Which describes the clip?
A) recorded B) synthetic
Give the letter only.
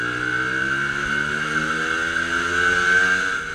A